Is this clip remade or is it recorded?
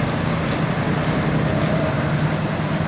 recorded